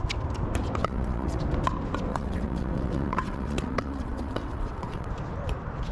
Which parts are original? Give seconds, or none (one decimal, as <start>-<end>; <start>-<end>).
0.0-0.8; 1.4-2.1; 5.1-5.9